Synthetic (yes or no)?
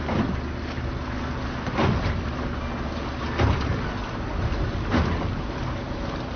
no